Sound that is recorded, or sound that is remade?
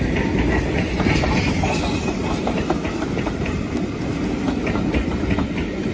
recorded